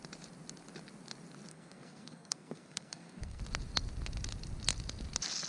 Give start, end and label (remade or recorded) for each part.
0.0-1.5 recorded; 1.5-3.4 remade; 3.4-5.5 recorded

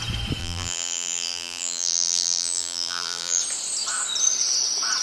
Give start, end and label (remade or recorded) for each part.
0.0-0.4 recorded; 0.4-3.4 remade; 3.4-5.0 recorded

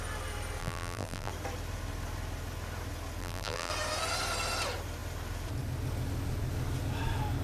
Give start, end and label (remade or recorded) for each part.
0.0-0.6 recorded; 0.6-1.3 remade; 1.3-3.2 recorded; 3.2-3.7 remade; 3.7-7.4 recorded

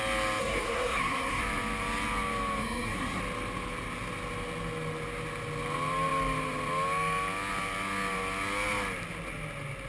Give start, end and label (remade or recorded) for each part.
0.0-0.4 recorded; 0.4-1.4 remade; 1.4-2.6 recorded; 2.6-3.2 remade; 3.2-9.9 recorded

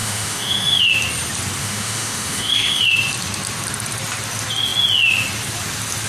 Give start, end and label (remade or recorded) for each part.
0.0-0.8 remade; 0.8-1.6 recorded; 1.6-2.8 remade; 2.8-6.1 recorded

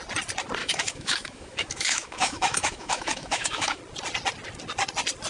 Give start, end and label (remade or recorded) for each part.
0.0-0.6 recorded; 0.6-3.8 remade; 3.8-5.3 recorded